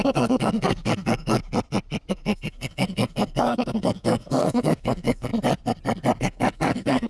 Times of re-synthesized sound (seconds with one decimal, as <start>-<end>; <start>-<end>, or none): 0.0-1.4; 2.1-5.3; 6.2-7.1